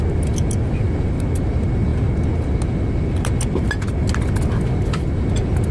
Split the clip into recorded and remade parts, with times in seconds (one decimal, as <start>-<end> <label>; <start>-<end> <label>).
0.0-5.7 recorded